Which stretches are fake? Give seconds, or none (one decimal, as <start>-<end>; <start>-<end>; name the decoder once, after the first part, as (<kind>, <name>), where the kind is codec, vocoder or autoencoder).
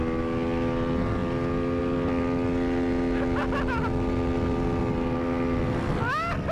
none